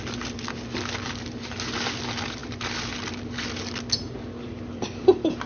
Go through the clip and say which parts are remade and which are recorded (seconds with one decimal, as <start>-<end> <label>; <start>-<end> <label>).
0.0-5.5 recorded